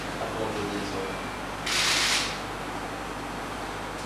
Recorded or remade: recorded